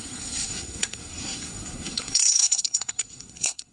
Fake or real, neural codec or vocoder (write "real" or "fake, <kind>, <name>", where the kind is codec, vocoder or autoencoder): fake, codec, SNAC